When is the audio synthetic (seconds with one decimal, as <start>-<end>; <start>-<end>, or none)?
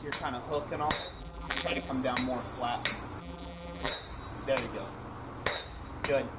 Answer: 1.2-1.9; 3.2-3.9